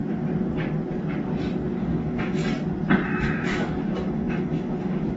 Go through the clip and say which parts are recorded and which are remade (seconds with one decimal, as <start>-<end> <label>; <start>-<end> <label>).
0.0-1.8 recorded; 1.8-2.4 remade; 2.4-3.1 recorded; 3.1-5.2 remade